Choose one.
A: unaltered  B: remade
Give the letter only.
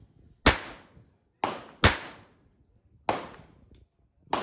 A